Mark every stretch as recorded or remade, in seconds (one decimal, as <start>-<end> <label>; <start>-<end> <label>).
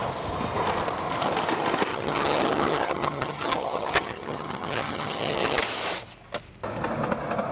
0.0-1.9 recorded; 1.9-5.6 remade; 5.6-7.5 recorded